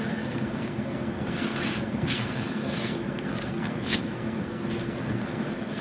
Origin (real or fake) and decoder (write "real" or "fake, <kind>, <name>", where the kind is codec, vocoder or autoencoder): fake, codec, SNAC